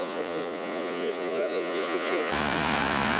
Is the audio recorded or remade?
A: remade